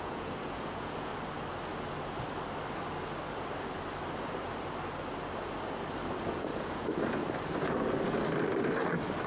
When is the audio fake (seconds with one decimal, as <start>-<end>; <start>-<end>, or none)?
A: 0.0-1.1; 6.3-6.8